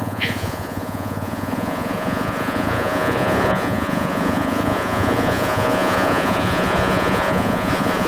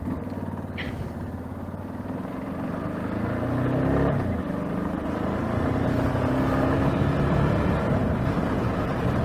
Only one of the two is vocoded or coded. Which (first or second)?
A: first